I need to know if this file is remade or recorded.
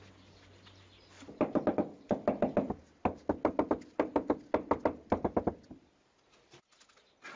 recorded